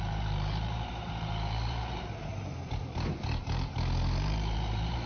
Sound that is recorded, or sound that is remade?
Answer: remade